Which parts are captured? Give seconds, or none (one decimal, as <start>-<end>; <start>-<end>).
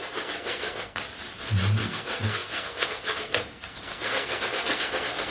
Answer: 1.0-1.8